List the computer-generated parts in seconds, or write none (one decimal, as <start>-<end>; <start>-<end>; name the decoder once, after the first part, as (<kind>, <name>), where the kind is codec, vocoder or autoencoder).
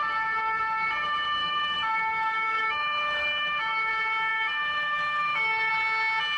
1.4-3.9 (autoencoder, DAC-VAE); 4.3-5.7